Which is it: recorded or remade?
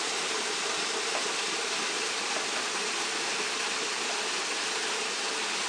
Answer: recorded